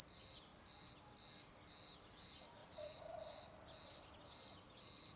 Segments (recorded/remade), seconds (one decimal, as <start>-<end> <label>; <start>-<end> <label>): 0.0-2.6 recorded; 2.6-3.1 remade; 3.1-5.2 recorded